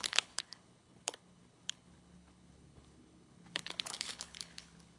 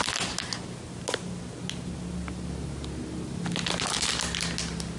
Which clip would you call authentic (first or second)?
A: second